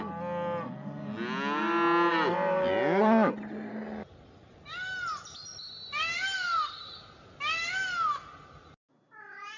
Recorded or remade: recorded